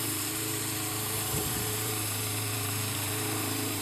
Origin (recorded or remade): remade